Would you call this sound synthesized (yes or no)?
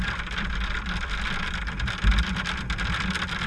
no